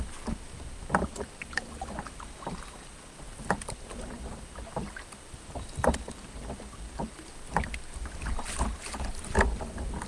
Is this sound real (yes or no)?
yes